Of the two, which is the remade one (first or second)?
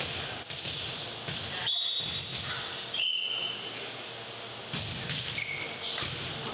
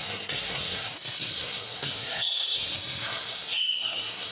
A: second